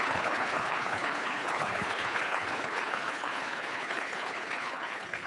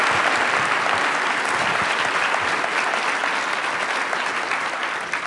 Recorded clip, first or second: second